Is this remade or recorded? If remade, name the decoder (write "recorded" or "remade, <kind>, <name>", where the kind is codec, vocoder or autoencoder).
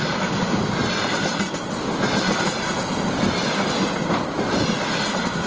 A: recorded